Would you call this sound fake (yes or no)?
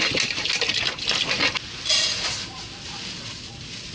no